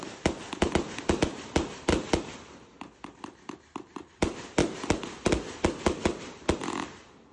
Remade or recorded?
recorded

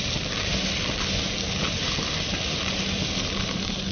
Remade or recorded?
recorded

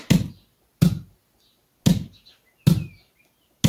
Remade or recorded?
recorded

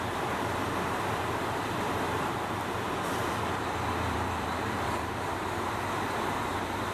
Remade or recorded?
remade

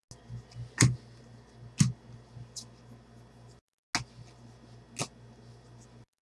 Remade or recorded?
recorded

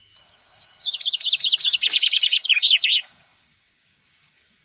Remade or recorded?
remade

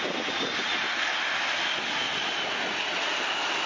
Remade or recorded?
recorded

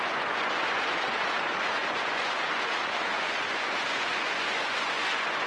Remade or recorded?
remade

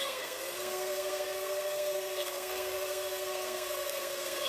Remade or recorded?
remade